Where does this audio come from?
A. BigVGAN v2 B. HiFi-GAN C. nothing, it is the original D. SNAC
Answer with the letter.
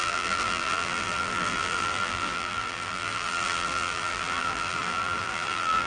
A